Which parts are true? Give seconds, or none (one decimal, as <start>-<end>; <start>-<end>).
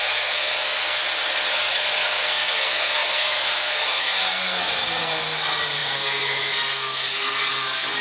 1.0-1.5